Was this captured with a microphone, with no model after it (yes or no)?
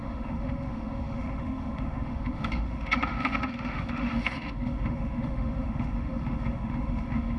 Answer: no